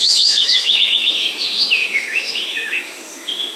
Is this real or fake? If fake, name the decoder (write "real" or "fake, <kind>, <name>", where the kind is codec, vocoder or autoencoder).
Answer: fake, autoencoder, DAC-VAE